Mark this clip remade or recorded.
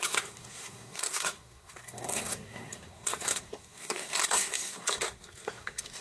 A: remade